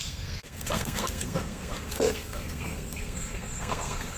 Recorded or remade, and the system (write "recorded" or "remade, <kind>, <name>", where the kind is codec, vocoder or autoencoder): remade, codec, SNAC